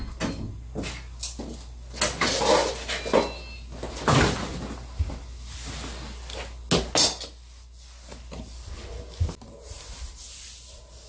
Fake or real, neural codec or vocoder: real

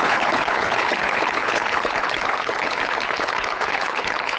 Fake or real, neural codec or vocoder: fake, codec, HILCodec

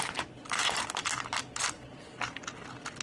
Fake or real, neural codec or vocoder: real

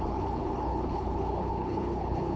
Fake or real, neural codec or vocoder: fake, codec, HILCodec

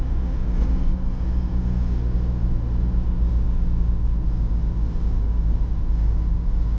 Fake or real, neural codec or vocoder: real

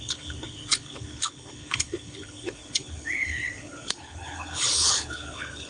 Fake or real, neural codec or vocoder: fake, codec, HILCodec